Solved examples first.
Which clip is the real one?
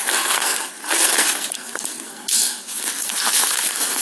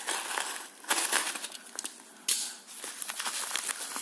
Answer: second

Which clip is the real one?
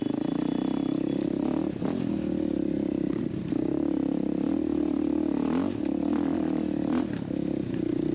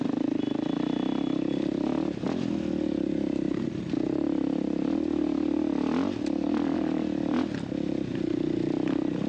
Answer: second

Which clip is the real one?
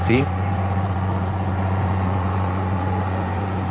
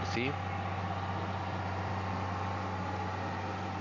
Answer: second